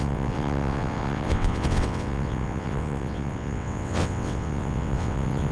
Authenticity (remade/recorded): remade